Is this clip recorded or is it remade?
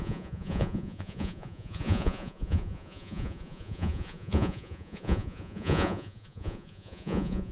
remade